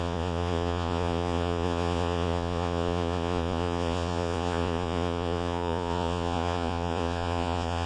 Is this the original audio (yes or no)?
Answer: no